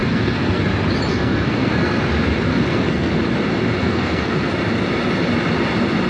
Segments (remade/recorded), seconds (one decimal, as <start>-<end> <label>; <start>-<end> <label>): 0.0-0.7 remade; 0.7-1.1 recorded; 1.1-2.0 remade; 2.0-2.5 recorded; 2.5-3.1 remade; 3.1-3.8 recorded; 3.8-4.5 remade; 4.5-6.1 recorded